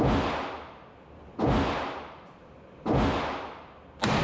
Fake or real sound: real